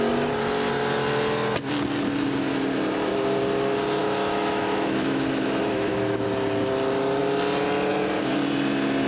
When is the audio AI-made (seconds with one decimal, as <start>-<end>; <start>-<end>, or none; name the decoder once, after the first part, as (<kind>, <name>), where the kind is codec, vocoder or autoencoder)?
4.0-5.9 (autoencoder, DAC-VAE)